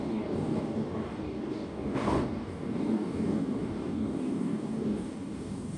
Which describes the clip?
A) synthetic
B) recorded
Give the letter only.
A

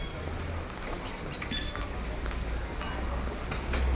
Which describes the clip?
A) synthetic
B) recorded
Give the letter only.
B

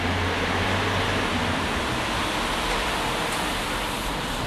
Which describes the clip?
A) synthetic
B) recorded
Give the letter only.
B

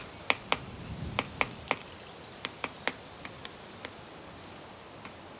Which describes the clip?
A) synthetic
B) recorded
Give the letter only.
B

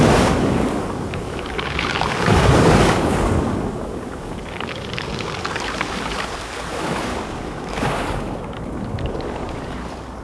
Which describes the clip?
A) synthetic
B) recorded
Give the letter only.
A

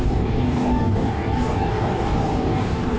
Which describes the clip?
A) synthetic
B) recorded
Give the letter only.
A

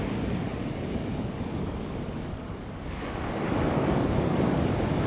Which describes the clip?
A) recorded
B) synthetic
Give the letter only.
B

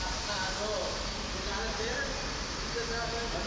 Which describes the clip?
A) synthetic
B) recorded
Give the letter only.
B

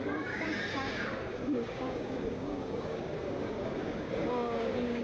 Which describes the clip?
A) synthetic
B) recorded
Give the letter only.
A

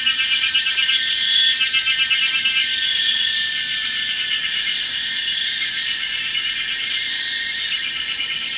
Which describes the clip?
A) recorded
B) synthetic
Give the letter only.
B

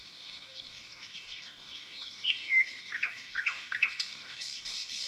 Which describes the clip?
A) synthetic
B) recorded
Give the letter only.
A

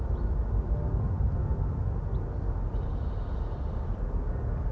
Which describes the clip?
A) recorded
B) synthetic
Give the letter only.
A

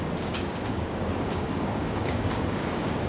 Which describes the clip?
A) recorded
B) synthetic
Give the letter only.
B